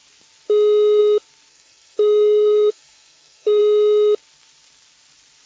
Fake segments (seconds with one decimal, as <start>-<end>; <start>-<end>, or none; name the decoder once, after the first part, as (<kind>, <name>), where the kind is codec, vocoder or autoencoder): 1.5-3.6 (codec, SNAC)